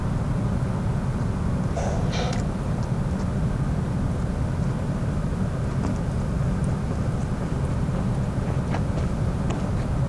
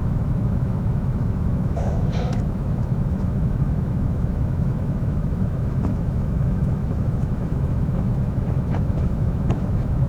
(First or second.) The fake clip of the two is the second